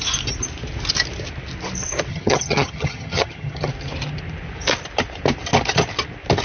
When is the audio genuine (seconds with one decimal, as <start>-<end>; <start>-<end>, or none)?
0.0-2.1; 3.7-6.4